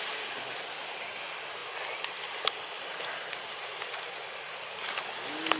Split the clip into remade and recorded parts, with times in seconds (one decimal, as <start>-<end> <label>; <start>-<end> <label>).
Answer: 0.0-5.6 recorded